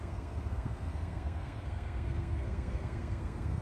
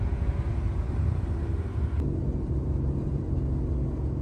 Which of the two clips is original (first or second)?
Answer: second